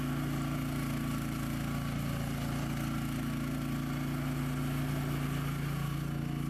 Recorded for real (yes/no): yes